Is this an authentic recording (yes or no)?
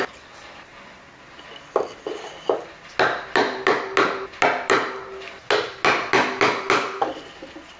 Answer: yes